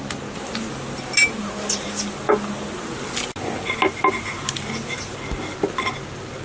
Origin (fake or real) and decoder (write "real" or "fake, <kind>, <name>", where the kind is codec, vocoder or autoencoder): real